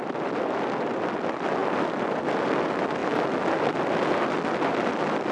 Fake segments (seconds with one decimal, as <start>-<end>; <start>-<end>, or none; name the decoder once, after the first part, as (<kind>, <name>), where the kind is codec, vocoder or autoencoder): none